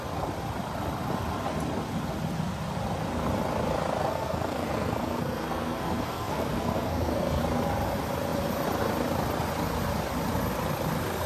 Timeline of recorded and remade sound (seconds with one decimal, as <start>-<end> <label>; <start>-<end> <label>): 0.0-4.0 recorded; 4.0-7.4 remade; 7.4-11.3 recorded